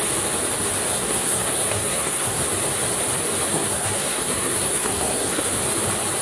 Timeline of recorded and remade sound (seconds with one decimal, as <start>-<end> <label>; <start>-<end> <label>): 0.0-0.9 recorded; 0.9-2.4 remade; 2.4-3.5 recorded; 3.5-5.4 remade; 5.4-6.2 recorded